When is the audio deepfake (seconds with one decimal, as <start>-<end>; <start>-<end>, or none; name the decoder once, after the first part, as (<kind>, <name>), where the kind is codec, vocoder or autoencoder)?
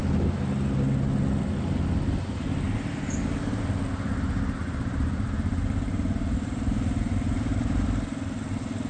4.6-7.5 (vocoder, BigVGAN v2)